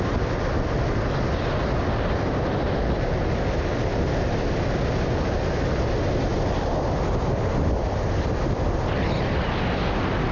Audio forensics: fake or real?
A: real